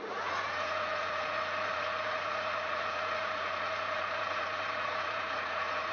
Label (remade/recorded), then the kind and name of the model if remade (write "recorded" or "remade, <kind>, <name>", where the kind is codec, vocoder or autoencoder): remade, vocoder, Vocos